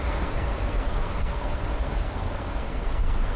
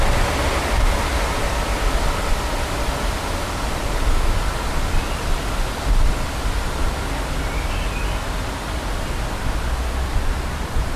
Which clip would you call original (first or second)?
second